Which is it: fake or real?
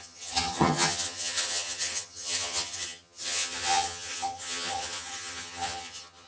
fake